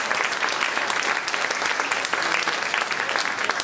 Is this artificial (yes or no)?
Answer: no